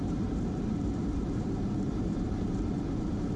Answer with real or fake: fake